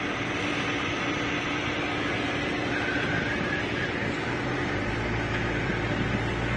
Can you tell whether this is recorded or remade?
recorded